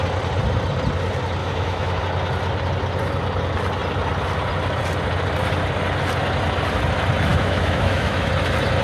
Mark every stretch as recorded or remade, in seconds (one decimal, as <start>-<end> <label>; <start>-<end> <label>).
0.0-1.4 recorded; 1.4-2.0 remade; 2.0-7.3 recorded; 7.3-8.3 remade; 8.3-8.8 recorded